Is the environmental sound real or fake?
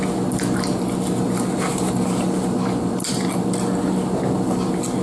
real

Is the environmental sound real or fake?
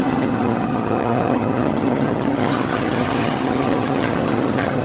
fake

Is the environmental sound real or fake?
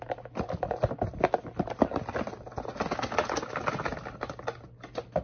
real